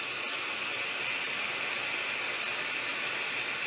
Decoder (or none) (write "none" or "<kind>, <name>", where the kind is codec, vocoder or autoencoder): none